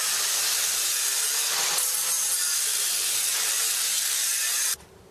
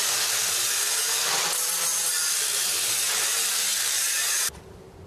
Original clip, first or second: first